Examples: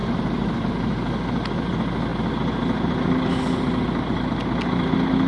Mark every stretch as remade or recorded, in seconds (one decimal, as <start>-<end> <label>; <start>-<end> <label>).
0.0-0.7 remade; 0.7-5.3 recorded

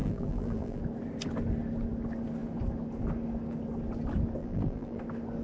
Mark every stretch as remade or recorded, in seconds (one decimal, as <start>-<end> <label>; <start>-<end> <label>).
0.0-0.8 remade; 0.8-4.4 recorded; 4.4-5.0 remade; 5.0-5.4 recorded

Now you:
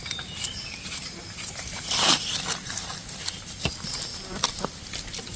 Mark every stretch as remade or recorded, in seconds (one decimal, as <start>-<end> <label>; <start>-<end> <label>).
0.0-2.3 remade; 2.3-5.4 recorded

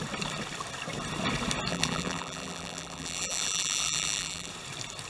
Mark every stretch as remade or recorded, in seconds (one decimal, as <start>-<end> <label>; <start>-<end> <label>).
0.0-1.7 recorded; 1.7-4.5 remade; 4.5-5.1 recorded

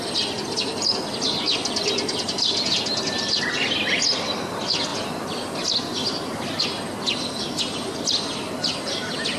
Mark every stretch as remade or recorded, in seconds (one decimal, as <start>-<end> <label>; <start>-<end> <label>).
0.0-9.4 recorded

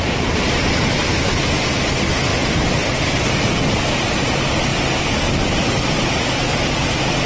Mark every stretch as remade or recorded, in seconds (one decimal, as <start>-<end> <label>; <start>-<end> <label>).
0.0-2.3 recorded; 2.3-4.2 remade; 4.2-7.3 recorded

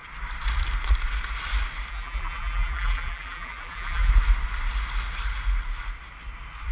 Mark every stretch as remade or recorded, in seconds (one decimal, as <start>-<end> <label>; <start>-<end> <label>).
0.0-1.9 recorded; 1.9-4.1 remade; 4.1-6.7 recorded

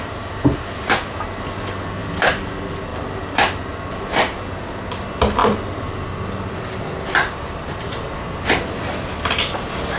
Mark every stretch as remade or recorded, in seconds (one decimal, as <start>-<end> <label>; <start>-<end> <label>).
0.0-2.0 recorded; 2.0-2.5 remade; 2.5-5.4 recorded; 5.4-8.2 remade; 8.2-10.0 recorded